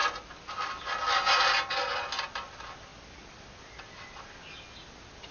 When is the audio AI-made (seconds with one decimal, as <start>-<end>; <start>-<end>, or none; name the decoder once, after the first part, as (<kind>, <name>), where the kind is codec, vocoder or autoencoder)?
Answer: none